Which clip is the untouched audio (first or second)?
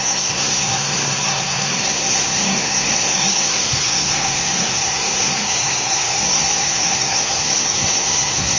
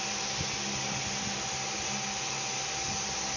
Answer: second